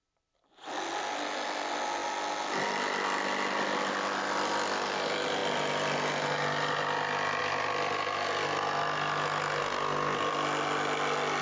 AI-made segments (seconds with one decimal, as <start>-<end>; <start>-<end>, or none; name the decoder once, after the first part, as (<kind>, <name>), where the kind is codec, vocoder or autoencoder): none